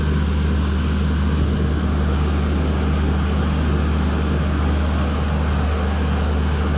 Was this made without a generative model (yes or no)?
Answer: yes